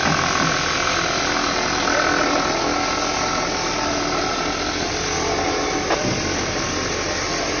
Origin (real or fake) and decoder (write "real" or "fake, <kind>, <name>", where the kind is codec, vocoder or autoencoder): real